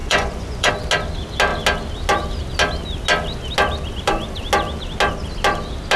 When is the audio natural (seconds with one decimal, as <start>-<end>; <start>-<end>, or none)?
0.7-6.0